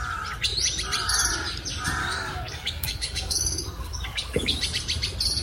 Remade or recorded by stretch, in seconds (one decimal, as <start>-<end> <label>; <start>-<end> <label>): 0.0-2.0 recorded; 2.0-4.6 remade; 4.6-5.4 recorded